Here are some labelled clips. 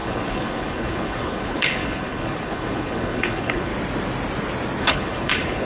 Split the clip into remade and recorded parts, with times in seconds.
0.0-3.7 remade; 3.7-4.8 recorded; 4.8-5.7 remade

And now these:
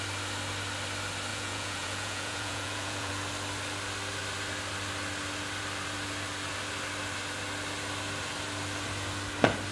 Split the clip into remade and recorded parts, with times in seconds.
0.0-1.3 recorded; 1.3-3.1 remade; 3.1-9.7 recorded

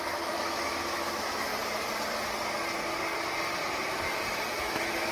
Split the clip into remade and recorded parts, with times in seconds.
0.0-1.5 remade; 1.5-4.6 recorded; 4.6-5.1 remade

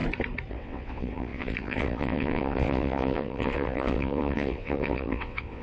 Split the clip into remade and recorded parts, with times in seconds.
0.0-0.5 recorded; 0.5-5.6 remade

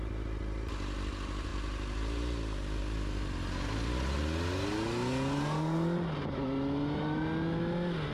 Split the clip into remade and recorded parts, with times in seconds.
0.0-8.1 recorded